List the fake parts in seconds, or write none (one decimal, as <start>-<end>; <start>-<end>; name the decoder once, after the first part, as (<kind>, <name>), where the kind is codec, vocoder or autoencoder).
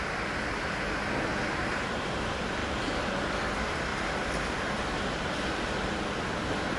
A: 3.9-4.8 (vocoder, BigVGAN v2)